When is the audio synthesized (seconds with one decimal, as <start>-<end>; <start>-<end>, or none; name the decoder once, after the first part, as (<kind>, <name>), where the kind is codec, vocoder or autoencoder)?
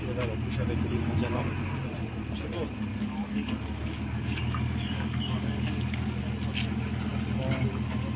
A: 2.9-6.2 (codec, DAC)